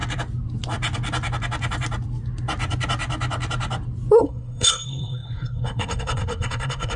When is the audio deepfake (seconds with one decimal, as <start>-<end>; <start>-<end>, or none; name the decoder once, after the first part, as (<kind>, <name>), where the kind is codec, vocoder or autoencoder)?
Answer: 4.2-7.0 (codec, SNAC)